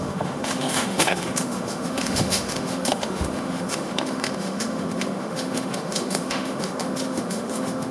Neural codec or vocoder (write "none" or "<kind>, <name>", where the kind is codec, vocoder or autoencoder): autoencoder, DAC-VAE